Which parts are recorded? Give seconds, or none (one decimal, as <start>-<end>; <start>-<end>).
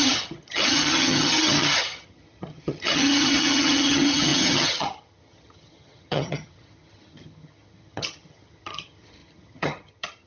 none